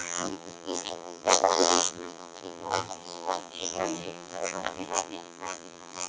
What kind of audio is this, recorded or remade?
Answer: remade